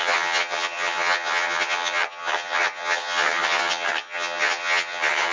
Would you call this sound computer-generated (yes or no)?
yes